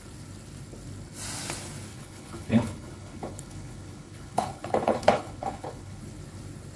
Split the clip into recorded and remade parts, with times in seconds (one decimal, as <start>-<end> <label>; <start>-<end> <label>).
0.0-1.9 recorded; 1.9-6.0 remade; 6.0-6.8 recorded